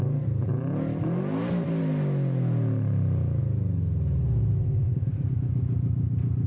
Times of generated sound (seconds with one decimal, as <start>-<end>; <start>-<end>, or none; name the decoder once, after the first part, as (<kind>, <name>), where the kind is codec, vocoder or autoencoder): none